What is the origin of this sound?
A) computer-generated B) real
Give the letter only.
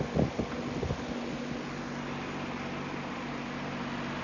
B